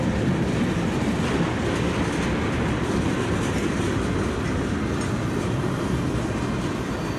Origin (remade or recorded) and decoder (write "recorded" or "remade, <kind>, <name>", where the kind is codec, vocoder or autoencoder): recorded